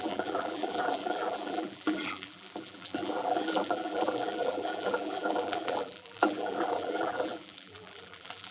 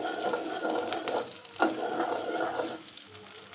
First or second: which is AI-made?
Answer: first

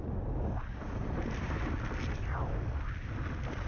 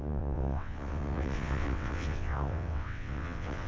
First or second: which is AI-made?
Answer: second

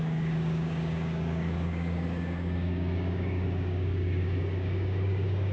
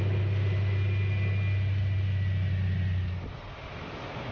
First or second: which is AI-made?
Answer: first